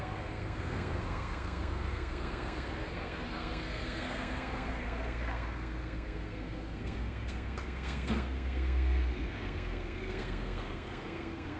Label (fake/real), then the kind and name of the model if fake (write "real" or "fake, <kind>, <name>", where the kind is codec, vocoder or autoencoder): fake, codec, SNAC